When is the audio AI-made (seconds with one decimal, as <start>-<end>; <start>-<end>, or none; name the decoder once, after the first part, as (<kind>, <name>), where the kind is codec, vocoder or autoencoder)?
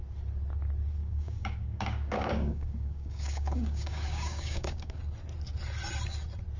1.0-5.0 (codec, DAC)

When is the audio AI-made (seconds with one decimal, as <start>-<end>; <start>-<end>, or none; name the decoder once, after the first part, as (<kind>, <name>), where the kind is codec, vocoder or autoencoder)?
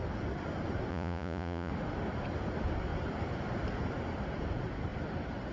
0.9-1.7 (vocoder, Vocos)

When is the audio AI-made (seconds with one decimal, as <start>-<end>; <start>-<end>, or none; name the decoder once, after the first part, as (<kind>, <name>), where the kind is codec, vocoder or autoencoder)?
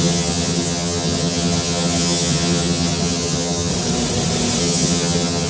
0.0-3.7 (vocoder, HiFi-GAN); 4.6-5.5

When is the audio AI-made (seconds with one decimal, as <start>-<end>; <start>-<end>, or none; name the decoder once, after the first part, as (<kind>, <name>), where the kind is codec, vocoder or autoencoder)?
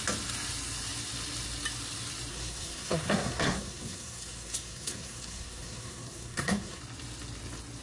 2.3-6.8 (codec, SNAC)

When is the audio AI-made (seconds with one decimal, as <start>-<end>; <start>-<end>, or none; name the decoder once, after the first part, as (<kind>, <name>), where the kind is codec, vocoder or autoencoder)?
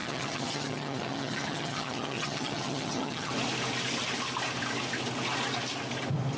0.0-3.3 (vocoder, HiFi-GAN)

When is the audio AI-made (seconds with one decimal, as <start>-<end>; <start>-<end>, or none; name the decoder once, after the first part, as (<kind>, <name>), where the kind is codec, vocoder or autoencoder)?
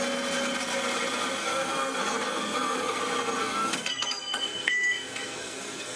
1.4-3.0 (codec, SNAC); 3.4-6.0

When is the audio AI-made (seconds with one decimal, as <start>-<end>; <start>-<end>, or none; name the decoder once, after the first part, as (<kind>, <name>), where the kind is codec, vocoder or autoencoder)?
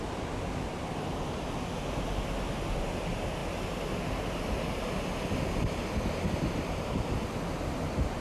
none